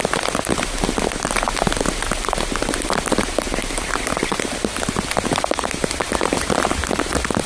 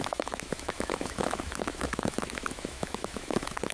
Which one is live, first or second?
first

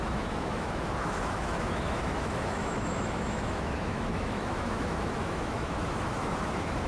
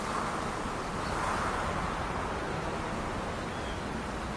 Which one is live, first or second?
second